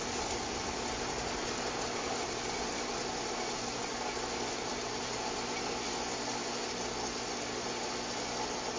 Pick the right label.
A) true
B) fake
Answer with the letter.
A